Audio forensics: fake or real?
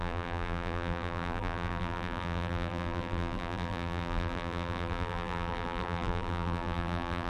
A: fake